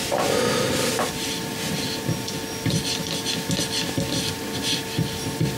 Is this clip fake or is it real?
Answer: real